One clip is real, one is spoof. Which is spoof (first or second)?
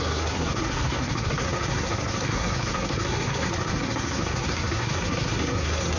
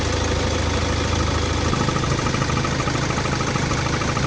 first